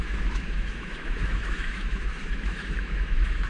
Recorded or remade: remade